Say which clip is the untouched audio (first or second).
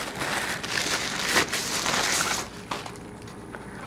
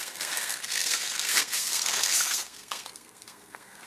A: first